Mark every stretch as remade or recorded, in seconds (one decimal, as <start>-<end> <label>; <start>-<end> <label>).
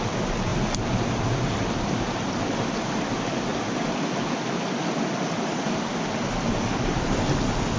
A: 0.0-7.8 recorded